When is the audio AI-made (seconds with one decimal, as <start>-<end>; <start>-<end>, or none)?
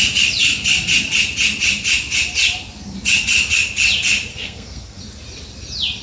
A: 4.3-5.0